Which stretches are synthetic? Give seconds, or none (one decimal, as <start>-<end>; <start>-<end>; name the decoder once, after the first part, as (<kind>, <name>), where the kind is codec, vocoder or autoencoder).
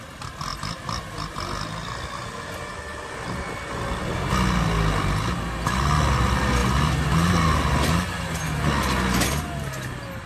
none